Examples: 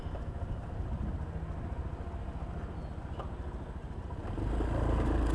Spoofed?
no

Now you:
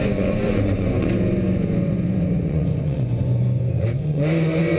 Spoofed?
yes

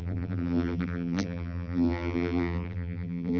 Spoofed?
yes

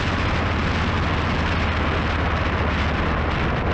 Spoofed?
no